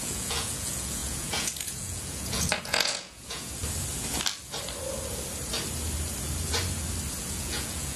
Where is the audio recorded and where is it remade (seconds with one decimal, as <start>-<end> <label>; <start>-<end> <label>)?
0.0-3.6 remade; 3.6-7.3 recorded; 7.3-8.0 remade